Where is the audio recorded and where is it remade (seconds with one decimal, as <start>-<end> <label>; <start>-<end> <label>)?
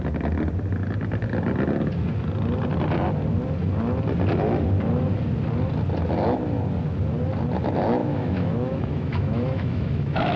0.0-8.0 recorded; 8.0-10.4 remade